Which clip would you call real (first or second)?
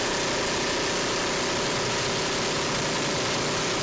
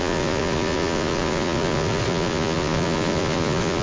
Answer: first